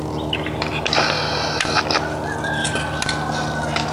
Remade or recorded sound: recorded